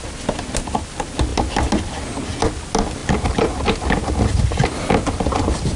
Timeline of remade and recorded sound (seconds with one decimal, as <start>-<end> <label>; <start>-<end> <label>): 0.0-5.8 recorded